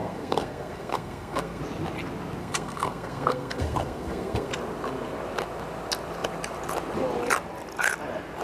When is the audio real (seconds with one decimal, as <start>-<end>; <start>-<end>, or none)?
1.6-2.4; 4.5-8.4